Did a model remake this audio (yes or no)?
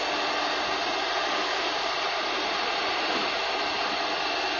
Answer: no